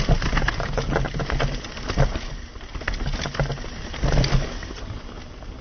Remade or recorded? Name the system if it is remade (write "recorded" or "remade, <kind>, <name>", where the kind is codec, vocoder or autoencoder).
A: recorded